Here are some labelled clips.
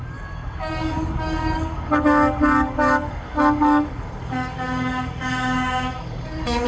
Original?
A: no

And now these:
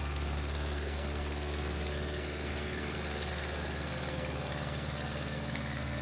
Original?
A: no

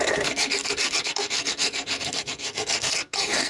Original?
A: no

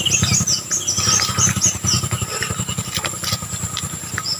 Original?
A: yes